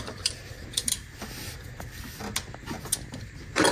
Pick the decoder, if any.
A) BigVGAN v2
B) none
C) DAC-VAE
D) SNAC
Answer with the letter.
B